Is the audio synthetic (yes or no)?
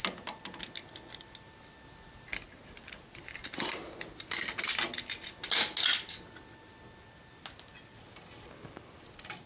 no